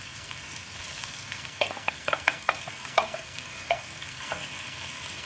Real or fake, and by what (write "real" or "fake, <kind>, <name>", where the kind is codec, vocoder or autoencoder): fake, codec, SNAC